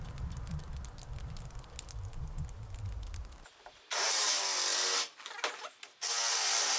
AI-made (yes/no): no